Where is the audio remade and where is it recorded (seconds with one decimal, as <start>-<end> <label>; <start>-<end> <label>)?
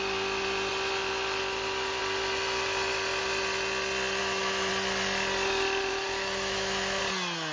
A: 0.0-4.2 recorded; 4.2-4.7 remade; 4.7-5.9 recorded; 5.9-7.0 remade; 7.0-7.5 recorded